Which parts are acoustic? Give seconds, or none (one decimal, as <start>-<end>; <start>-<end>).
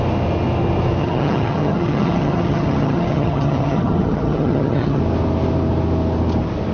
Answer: 0.0-1.0; 5.0-6.7